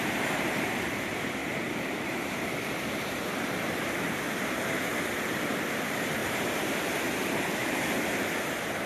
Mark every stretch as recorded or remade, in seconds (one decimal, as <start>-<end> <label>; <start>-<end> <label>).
0.0-1.4 recorded; 1.4-2.5 remade; 2.5-6.2 recorded; 6.2-6.8 remade; 6.8-7.6 recorded; 7.6-8.9 remade